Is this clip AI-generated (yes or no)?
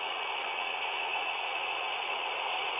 yes